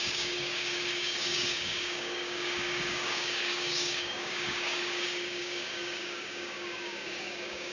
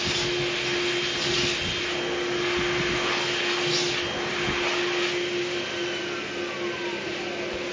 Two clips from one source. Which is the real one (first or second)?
second